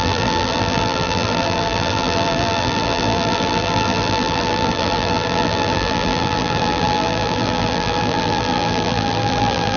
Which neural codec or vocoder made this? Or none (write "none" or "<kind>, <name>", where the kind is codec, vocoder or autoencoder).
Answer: vocoder, BigVGAN v2